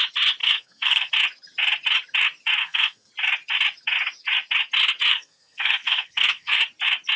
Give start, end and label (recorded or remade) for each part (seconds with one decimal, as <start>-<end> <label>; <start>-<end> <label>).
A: 0.0-0.4 recorded; 0.4-1.1 remade; 1.1-2.6 recorded; 2.6-3.1 remade; 3.1-5.1 recorded; 5.1-6.6 remade; 6.6-7.2 recorded